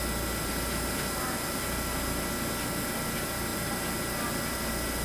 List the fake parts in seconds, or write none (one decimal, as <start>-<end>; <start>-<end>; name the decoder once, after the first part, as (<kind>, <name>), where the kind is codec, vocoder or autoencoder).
none